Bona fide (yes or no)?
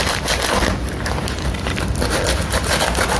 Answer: yes